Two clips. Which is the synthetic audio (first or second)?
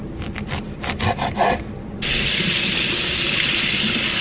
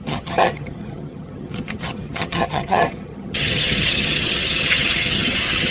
second